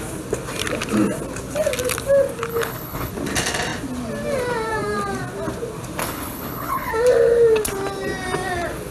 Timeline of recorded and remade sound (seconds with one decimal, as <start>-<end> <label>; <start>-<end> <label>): 0.0-2.5 recorded; 2.5-3.1 remade; 3.1-6.0 recorded; 6.0-6.9 remade; 6.9-8.9 recorded